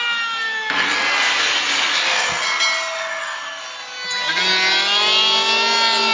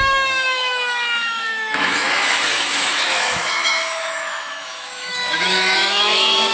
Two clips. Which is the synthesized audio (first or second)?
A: second